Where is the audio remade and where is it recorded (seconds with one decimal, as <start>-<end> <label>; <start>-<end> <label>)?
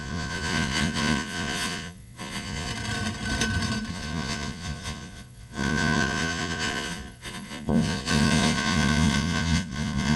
0.0-2.7 remade; 2.7-3.9 recorded; 3.9-10.2 remade